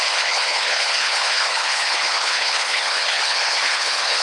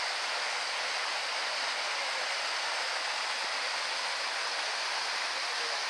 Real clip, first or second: second